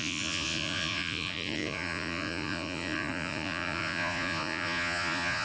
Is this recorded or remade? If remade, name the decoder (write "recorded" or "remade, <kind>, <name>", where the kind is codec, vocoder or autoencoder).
remade, vocoder, Vocos